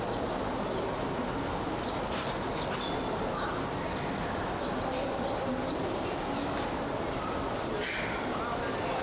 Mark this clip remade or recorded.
recorded